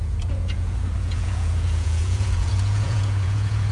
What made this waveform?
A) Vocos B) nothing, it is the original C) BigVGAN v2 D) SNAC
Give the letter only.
A